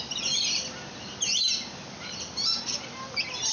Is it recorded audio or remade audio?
recorded